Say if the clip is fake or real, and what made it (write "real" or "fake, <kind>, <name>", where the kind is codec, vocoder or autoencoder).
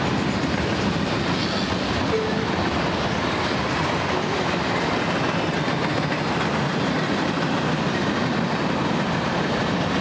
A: real